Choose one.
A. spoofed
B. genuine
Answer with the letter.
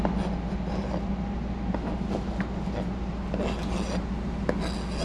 B